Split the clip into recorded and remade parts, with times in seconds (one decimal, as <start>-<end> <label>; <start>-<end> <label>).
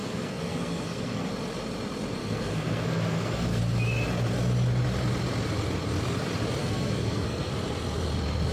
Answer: 0.0-1.3 remade; 1.3-2.2 recorded; 2.2-3.6 remade; 3.6-6.6 recorded; 6.6-7.5 remade; 7.5-8.5 recorded